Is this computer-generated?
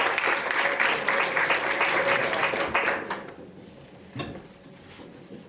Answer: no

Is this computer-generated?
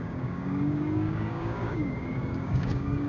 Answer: yes